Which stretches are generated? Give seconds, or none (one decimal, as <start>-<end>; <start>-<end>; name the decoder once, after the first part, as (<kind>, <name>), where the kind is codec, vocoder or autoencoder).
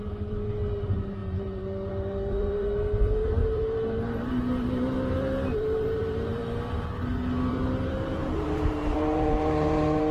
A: 0.0-6.4 (vocoder, BigVGAN v2); 7.5-10.1